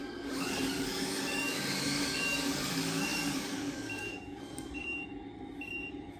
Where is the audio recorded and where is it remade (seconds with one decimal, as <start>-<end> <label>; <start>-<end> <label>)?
0.0-5.0 remade; 5.0-5.6 recorded; 5.6-6.2 remade